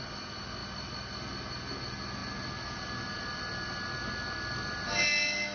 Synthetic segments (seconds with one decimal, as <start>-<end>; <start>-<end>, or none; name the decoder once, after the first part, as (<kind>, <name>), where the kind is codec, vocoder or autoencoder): none